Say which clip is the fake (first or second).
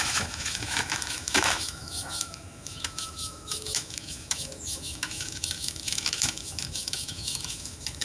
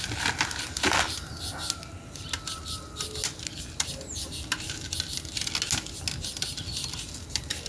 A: first